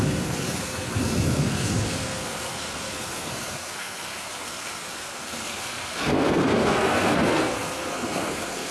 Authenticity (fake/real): fake